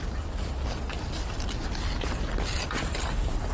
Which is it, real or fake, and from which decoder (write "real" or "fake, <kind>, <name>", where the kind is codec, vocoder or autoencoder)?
real